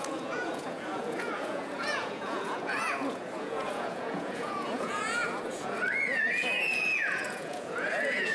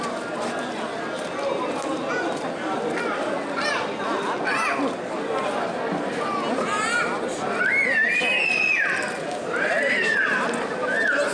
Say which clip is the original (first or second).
second